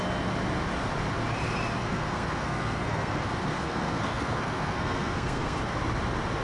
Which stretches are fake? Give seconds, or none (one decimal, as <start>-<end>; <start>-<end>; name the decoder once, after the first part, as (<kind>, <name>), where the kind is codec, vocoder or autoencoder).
1.8-5.6 (codec, SNAC)